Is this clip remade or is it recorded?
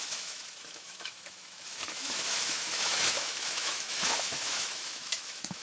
remade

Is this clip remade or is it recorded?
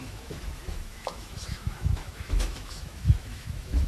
remade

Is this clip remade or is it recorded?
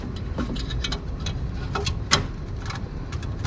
recorded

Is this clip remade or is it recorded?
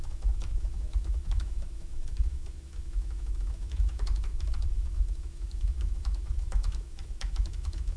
remade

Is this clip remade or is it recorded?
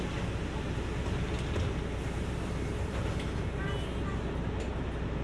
recorded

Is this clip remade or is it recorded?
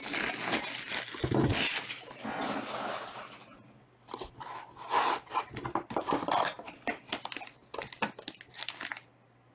recorded